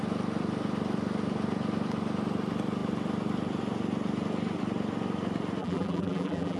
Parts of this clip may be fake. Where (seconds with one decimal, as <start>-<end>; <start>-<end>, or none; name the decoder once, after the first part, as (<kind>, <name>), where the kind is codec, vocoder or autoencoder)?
5.6-6.6 (vocoder, BigVGAN v2)